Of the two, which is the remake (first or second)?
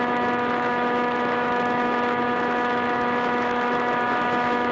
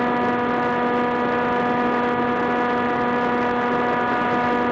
first